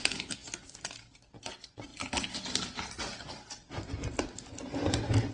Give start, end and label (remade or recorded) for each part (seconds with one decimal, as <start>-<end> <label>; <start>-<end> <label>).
0.0-5.3 recorded